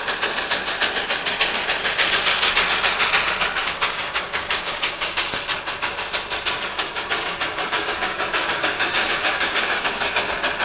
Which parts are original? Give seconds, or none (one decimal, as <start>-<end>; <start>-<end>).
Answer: 0.0-3.6; 5.2-6.7; 10.2-10.6